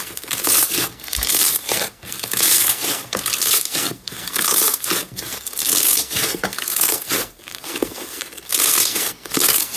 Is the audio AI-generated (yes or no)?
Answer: yes